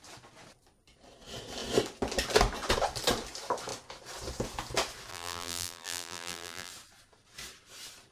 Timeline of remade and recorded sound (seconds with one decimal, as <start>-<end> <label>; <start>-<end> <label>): 0.0-5.1 recorded; 5.1-6.7 remade; 6.7-8.1 recorded